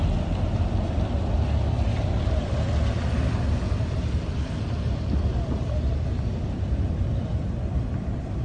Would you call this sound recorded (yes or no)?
no